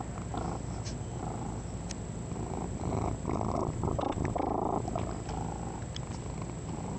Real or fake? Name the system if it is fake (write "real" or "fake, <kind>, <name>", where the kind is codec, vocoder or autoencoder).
real